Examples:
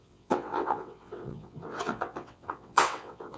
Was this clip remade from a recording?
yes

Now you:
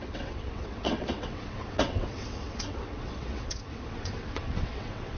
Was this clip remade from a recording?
yes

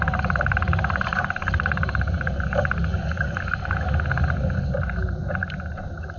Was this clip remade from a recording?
no